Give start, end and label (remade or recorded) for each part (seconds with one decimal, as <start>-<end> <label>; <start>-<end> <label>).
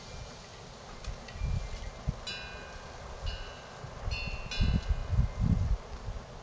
0.0-6.4 recorded